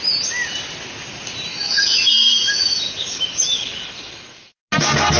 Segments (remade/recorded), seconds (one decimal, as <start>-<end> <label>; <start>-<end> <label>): 0.0-1.5 recorded; 1.5-4.6 remade; 4.6-5.2 recorded